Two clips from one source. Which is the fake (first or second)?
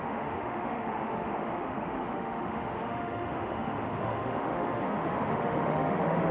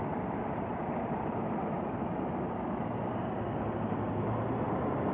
first